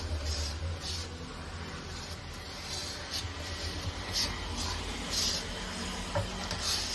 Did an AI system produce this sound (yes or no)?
no